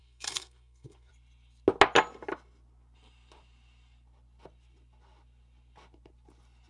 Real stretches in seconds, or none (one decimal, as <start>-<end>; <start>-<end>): 1.1-6.7